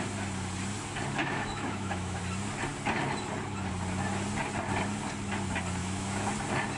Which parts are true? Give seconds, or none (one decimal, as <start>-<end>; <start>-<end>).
0.0-1.2; 2.2-5.8; 6.3-6.8